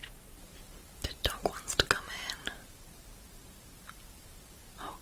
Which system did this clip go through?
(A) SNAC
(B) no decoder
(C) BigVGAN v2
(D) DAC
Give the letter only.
C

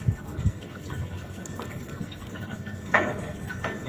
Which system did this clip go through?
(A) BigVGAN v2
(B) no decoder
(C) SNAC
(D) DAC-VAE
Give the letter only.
C